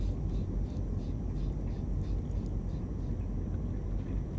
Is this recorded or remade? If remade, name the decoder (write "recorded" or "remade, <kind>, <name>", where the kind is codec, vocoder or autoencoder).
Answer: recorded